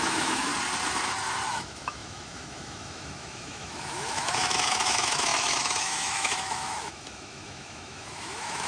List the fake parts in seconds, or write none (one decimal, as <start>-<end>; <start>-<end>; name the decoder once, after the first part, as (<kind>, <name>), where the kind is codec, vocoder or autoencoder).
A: 0.0-0.5 (autoencoder, DAC-VAE); 1.5-8.7